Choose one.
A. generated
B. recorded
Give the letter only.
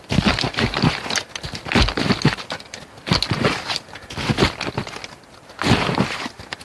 B